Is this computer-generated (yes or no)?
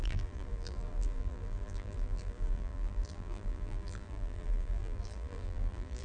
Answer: yes